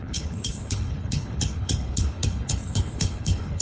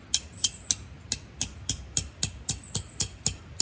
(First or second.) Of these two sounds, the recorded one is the second